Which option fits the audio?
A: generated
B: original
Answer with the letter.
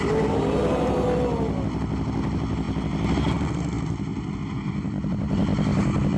B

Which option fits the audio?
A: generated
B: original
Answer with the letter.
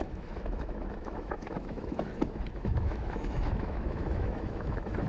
A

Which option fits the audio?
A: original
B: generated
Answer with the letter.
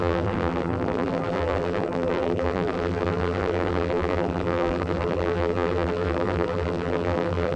B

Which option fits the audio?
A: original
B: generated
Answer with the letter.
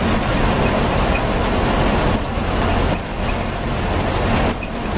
A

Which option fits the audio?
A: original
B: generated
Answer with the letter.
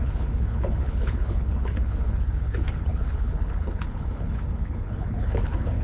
B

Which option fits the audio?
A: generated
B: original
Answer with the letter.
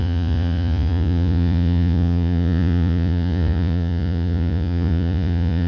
A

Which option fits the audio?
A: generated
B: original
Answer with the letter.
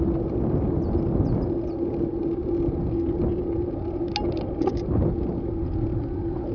B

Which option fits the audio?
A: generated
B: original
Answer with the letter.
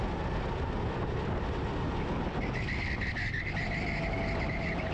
B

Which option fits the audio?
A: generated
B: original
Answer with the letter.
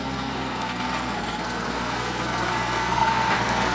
A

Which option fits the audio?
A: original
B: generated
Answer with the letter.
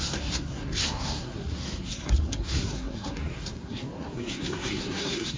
B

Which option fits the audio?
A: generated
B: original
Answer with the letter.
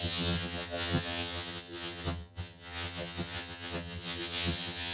A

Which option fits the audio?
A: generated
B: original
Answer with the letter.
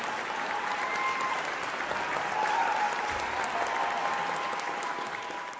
B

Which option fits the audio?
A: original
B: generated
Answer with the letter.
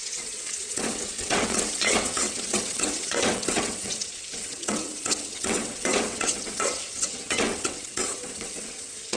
B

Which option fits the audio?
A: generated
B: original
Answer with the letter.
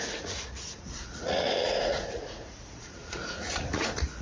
A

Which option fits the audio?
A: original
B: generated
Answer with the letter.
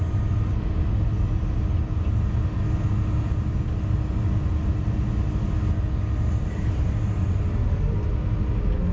A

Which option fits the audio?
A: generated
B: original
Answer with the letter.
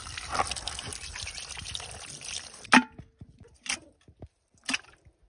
B